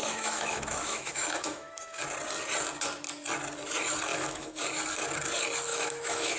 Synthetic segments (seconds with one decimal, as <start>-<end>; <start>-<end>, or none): 0.0-2.0; 4.1-4.6; 5.7-6.4